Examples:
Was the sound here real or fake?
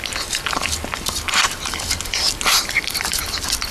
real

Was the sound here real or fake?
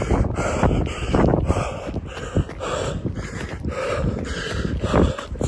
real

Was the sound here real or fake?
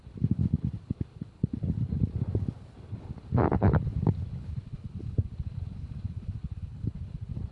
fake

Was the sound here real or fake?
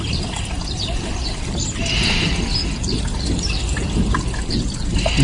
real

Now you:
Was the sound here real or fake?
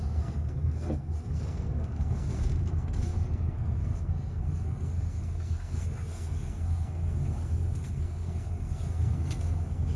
fake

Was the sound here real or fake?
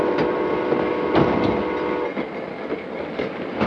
real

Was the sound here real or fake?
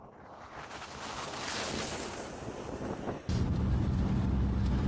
real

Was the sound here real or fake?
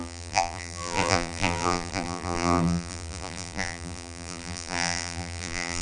fake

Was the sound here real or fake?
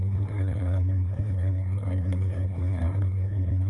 fake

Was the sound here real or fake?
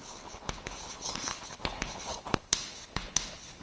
fake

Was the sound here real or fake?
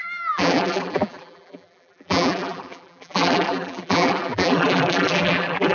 fake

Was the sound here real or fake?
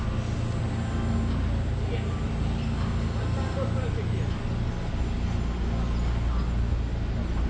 real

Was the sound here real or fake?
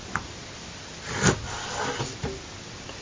real